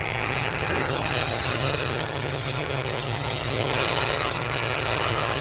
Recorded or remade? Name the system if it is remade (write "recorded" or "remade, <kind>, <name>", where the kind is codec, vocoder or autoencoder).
remade, vocoder, HiFi-GAN